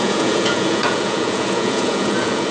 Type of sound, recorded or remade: remade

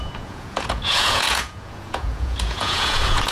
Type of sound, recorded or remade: remade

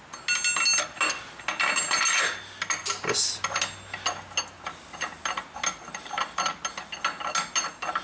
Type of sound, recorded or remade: recorded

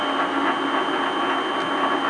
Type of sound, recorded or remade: recorded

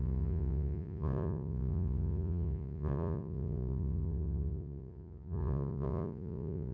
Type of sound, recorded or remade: remade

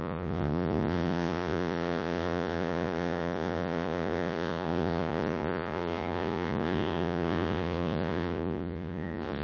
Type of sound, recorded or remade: remade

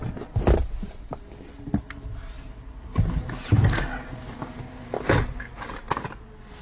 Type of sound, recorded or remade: recorded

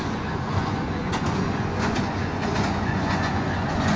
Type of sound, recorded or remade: remade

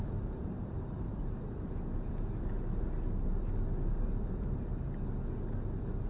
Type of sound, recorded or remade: recorded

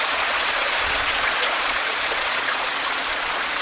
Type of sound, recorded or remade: remade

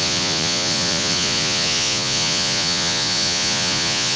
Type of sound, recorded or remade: remade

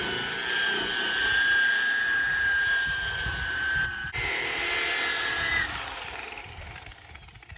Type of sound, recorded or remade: recorded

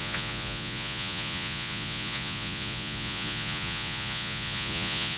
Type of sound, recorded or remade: remade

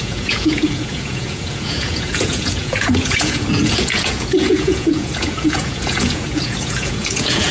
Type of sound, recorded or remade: remade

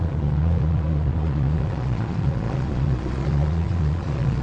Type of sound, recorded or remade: remade